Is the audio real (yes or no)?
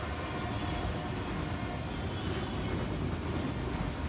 yes